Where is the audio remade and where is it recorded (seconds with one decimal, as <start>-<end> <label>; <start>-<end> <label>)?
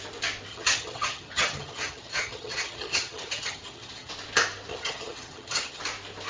0.0-0.5 recorded; 0.5-4.1 remade; 4.1-4.7 recorded; 4.7-5.8 remade; 5.8-6.3 recorded